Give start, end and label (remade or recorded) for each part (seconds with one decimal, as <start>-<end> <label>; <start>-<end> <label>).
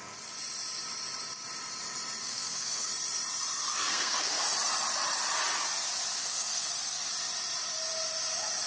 0.0-2.2 recorded; 2.2-2.9 remade; 2.9-3.7 recorded; 3.7-4.4 remade; 4.4-6.2 recorded; 6.2-7.1 remade; 7.1-8.7 recorded